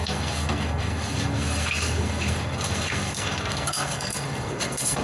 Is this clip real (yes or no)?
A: no